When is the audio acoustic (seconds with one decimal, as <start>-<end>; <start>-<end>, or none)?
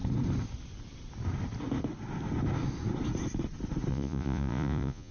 0.0-3.9